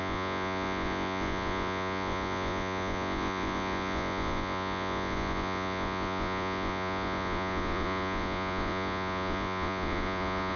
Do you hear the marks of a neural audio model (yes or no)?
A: yes